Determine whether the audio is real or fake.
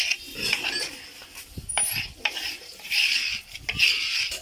real